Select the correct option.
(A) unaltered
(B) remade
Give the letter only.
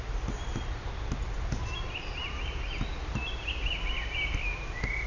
A